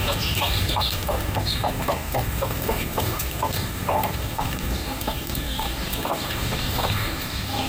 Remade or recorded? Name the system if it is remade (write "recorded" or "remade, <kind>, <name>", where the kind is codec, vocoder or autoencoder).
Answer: remade, codec, DAC